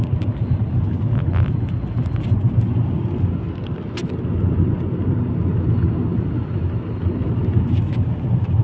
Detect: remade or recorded recorded